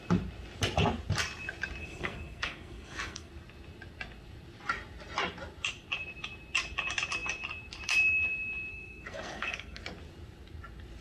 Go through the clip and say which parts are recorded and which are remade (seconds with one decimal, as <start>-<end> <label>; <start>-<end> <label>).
0.0-1.8 recorded; 1.8-3.3 remade; 3.3-8.7 recorded; 8.7-9.8 remade; 9.8-11.0 recorded